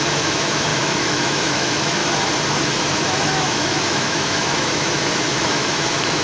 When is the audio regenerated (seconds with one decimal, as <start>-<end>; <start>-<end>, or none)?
0.0-2.0; 2.5-6.2